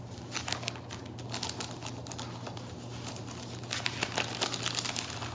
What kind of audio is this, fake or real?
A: real